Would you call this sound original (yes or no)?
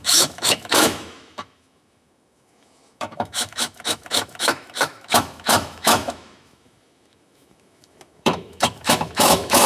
no